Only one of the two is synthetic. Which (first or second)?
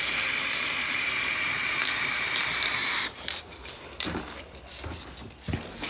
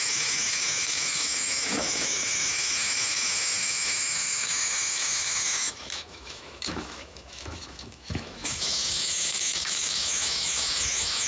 second